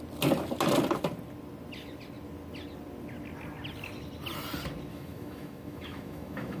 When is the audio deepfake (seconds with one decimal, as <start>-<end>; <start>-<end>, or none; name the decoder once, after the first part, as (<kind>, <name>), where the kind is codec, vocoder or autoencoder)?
4.9-6.6 (autoencoder, DAC-VAE)